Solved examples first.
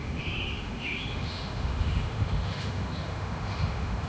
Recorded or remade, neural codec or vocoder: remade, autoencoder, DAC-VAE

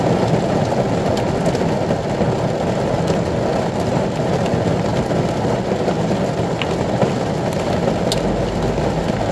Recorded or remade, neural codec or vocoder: recorded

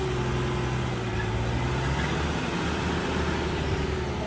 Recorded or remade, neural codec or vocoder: recorded